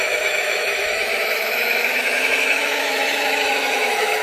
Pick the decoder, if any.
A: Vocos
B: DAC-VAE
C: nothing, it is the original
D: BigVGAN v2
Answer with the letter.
B